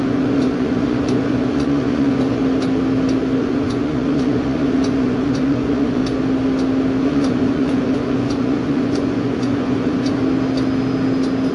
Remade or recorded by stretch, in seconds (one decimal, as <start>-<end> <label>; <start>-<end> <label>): 0.0-2.4 remade; 2.4-3.4 recorded; 3.4-6.0 remade; 6.0-7.0 recorded; 7.0-10.2 remade; 10.2-11.5 recorded